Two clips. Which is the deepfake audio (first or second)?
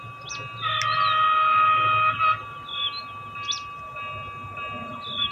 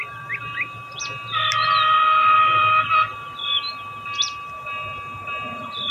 second